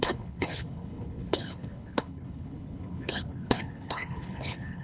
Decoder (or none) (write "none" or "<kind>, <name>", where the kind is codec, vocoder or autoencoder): codec, HILCodec